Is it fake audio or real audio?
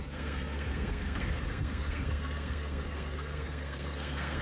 fake